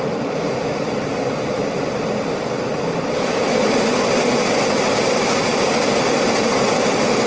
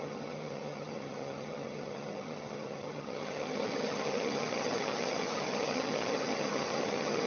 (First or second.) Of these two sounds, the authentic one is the first